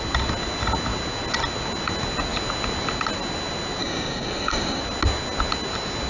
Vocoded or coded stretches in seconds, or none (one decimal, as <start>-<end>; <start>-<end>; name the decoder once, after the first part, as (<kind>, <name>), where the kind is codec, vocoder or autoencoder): 3.8-4.8 (codec, DAC)